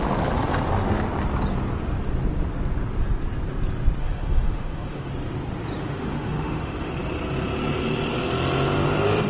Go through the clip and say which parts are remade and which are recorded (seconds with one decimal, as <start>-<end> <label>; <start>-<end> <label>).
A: 0.0-4.0 recorded; 4.0-5.1 remade; 5.1-5.8 recorded; 5.8-6.9 remade; 6.9-9.3 recorded